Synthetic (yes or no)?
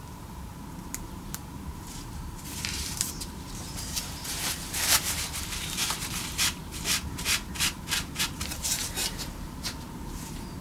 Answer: yes